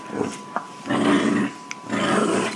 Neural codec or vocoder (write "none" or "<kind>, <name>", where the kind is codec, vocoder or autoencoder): none